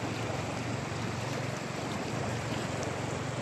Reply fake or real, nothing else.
real